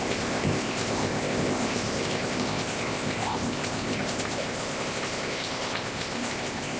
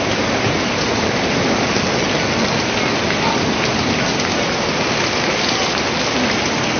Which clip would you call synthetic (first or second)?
first